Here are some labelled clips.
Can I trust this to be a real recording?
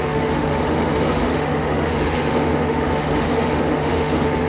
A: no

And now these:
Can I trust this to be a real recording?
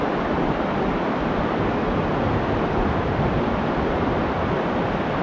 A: yes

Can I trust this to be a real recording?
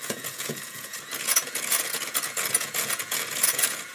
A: no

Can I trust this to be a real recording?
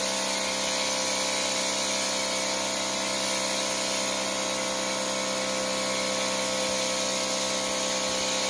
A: yes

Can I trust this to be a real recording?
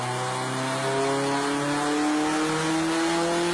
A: yes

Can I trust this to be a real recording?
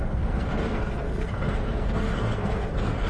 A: no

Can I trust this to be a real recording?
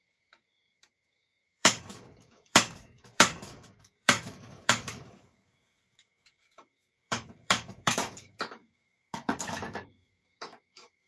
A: no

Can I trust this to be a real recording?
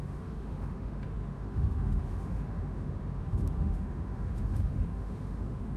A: no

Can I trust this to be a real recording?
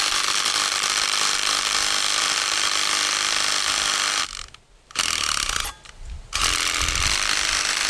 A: yes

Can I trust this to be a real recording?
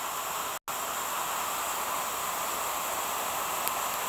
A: yes